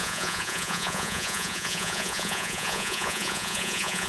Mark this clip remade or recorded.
remade